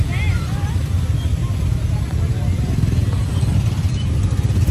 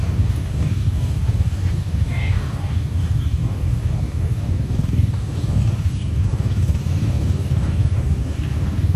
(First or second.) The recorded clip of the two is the first